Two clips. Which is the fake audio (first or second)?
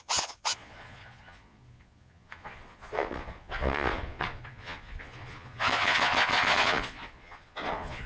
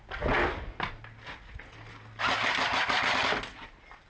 first